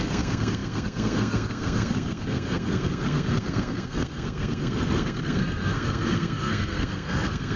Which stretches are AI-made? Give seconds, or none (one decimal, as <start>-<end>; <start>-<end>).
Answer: 0.0-7.6